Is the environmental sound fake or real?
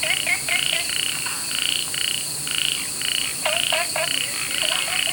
real